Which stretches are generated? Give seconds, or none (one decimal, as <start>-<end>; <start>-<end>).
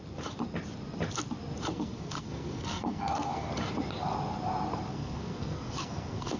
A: 1.7-3.5; 4.9-6.4